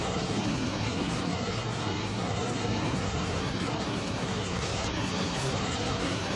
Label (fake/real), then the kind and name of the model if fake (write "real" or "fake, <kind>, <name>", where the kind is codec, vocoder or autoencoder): fake, codec, SNAC